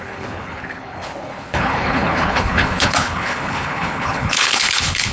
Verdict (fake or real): fake